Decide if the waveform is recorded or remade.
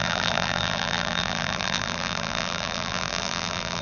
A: remade